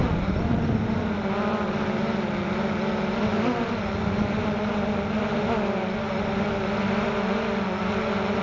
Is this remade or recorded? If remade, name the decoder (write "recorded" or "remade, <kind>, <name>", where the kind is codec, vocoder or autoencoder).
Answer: recorded